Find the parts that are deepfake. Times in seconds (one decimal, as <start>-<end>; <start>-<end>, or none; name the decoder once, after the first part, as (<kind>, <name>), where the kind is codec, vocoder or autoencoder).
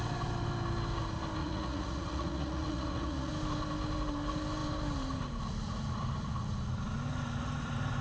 1.4-3.3 (vocoder, Vocos)